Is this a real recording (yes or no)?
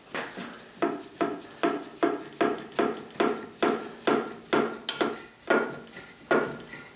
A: yes